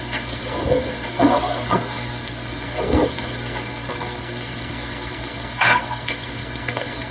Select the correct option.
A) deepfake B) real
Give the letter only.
A